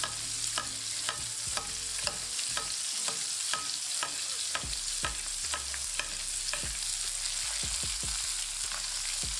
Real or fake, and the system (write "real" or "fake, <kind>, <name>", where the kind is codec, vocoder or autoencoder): real